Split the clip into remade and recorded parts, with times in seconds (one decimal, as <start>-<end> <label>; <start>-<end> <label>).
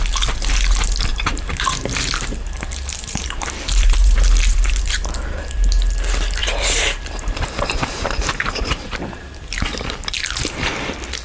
0.0-1.1 recorded; 1.1-4.8 remade; 4.8-6.4 recorded; 6.4-9.0 remade; 9.0-11.2 recorded